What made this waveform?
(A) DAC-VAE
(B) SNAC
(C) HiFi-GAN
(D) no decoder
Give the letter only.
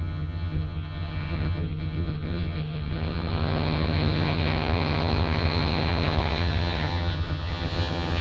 C